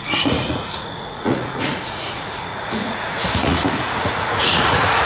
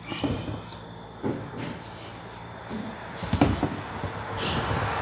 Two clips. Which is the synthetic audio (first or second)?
first